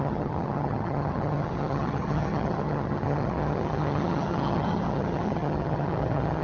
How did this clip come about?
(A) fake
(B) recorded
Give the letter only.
A